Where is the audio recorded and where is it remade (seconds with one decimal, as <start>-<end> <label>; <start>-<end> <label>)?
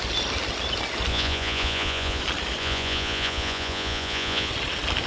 0.0-1.1 recorded; 1.1-2.2 remade; 2.2-2.6 recorded; 2.6-4.5 remade; 4.5-5.1 recorded